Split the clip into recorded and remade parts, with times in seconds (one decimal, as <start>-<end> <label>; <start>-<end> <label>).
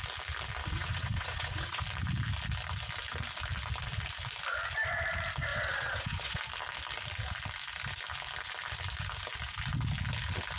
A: 0.0-0.6 recorded; 0.6-1.8 remade; 1.8-5.5 recorded; 5.5-6.4 remade; 6.4-10.6 recorded